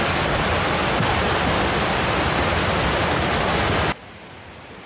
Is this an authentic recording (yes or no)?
yes